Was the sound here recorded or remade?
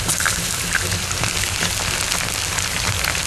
recorded